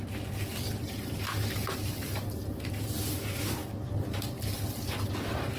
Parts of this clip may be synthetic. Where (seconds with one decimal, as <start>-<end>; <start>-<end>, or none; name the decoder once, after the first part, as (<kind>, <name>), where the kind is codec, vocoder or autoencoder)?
0.5-3.0 (vocoder, BigVGAN v2)